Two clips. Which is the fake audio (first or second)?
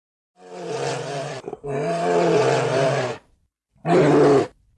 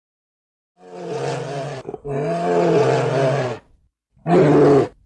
first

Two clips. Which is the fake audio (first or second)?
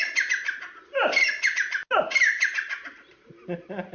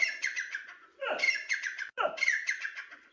second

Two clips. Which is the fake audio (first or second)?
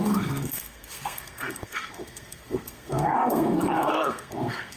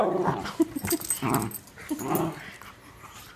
first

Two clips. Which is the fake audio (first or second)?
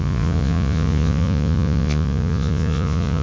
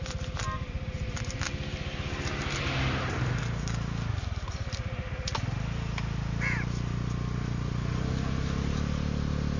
first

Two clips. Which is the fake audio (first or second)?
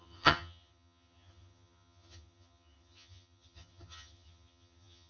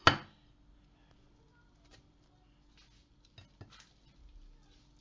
first